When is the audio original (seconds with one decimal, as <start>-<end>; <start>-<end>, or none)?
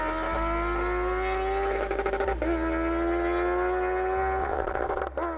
0.0-4.4; 5.0-5.4